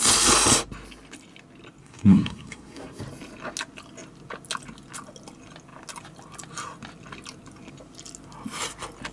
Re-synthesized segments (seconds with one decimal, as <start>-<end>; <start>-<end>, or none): 1.8-3.0